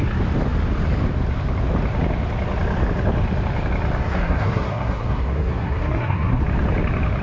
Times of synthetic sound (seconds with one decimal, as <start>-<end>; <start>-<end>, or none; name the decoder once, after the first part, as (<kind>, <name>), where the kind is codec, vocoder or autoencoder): 4.0-6.4 (codec, SNAC)